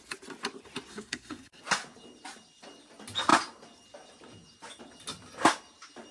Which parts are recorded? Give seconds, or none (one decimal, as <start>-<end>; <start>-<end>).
0.0-0.9; 1.6-6.1